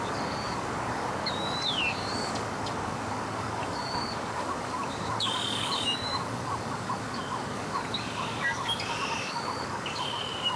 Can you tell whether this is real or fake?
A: fake